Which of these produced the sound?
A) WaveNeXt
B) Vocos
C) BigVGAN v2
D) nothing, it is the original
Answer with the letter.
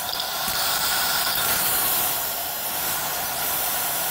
C